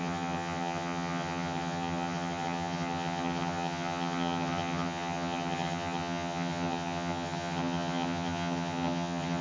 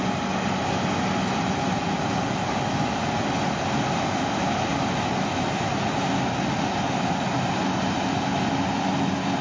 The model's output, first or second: first